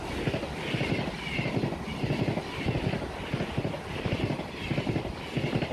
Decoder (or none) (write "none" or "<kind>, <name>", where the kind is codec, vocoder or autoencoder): none